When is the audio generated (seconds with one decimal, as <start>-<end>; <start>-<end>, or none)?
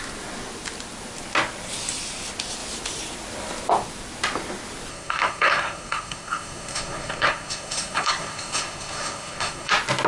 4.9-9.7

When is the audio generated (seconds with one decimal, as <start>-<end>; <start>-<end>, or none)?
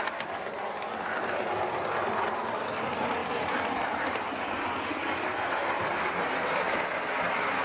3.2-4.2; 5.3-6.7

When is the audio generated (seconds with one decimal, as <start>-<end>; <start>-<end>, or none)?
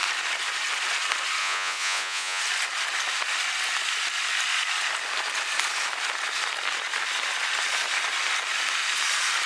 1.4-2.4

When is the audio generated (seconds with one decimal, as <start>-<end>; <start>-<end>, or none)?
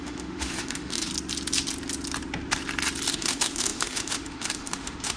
0.0-1.1; 3.1-5.2